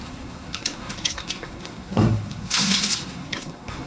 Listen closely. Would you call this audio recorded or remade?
remade